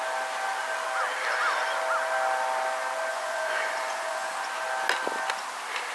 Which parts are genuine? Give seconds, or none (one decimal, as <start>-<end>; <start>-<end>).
0.0-3.1; 4.3-5.9